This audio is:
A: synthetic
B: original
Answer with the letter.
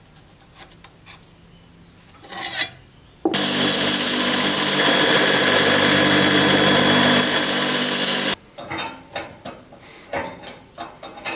B